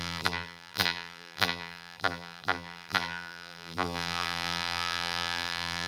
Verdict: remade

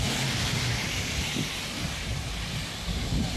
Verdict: recorded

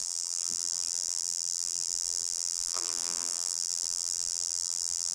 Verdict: remade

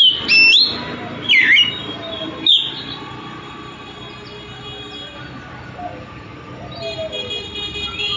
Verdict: recorded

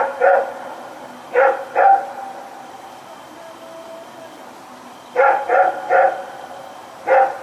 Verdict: recorded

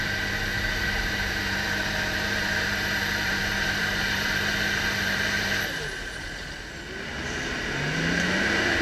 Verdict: remade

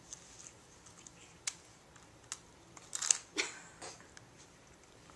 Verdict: recorded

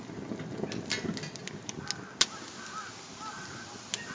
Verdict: recorded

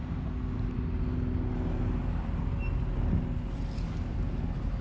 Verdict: recorded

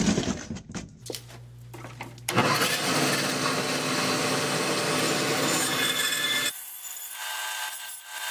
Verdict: recorded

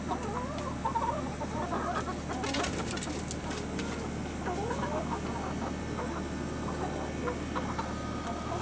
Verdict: recorded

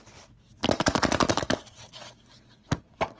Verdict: recorded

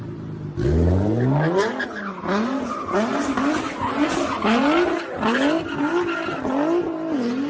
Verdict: recorded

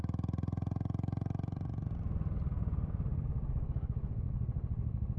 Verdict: recorded